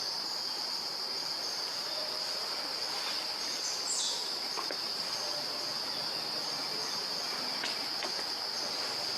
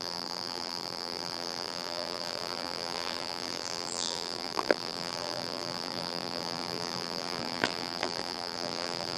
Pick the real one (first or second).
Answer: first